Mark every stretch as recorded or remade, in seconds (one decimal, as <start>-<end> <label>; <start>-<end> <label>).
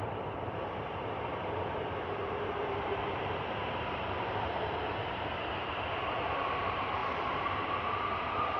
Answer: 0.0-7.0 remade; 7.0-7.9 recorded; 7.9-8.6 remade